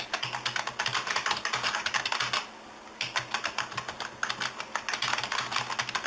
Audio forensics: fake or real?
real